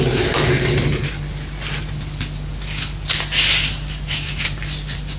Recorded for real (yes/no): yes